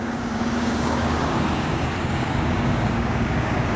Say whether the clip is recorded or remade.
remade